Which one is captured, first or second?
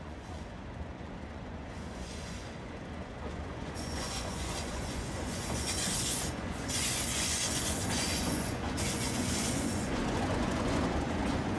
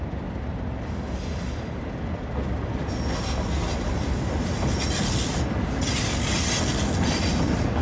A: second